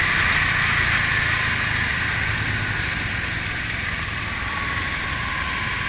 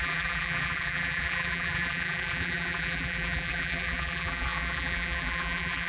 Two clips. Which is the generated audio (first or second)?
second